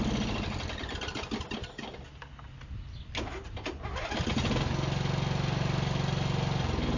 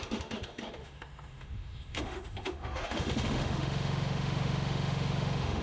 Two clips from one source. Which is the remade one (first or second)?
second